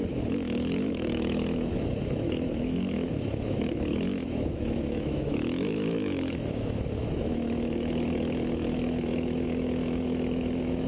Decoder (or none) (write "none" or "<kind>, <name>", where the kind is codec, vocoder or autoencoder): autoencoder, DAC-VAE